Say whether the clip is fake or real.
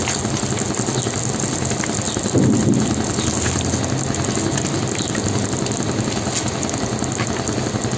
real